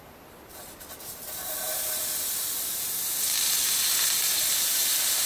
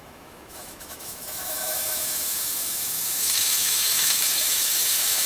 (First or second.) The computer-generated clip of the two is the second